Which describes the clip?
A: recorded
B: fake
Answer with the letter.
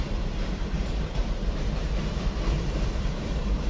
B